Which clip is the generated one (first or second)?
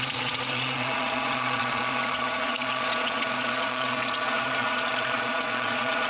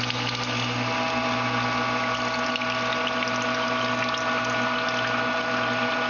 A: first